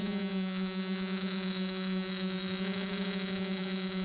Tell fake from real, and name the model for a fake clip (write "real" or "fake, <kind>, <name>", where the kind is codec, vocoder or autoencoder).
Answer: fake, vocoder, Vocos